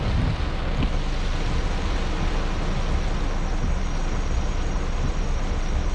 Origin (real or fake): real